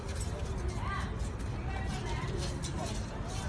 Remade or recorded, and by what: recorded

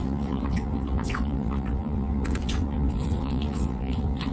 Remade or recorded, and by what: remade, vocoder, WaveNeXt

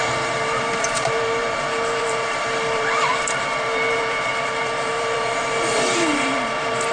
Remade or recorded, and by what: remade, vocoder, BigVGAN v2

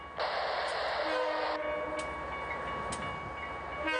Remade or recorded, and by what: recorded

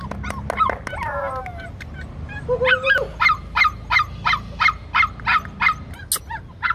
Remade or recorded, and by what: recorded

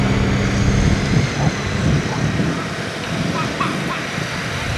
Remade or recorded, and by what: recorded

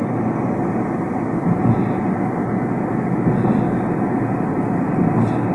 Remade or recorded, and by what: recorded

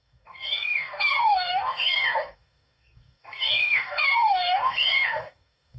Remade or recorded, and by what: remade, codec, DAC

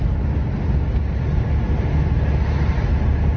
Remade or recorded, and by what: recorded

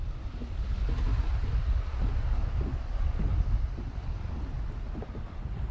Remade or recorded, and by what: recorded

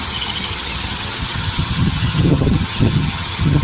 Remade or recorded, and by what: remade, vocoder, HiFi-GAN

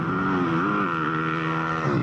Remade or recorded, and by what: recorded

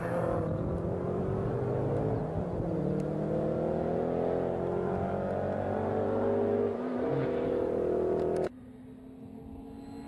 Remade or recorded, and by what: recorded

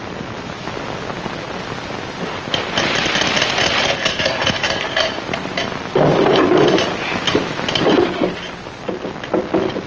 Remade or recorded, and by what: recorded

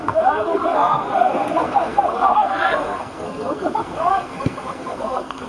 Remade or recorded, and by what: remade, codec, SNAC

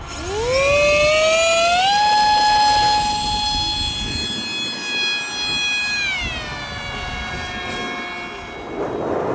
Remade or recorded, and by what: recorded